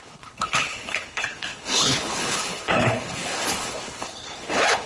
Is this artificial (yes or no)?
yes